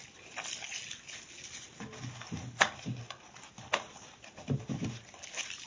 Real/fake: real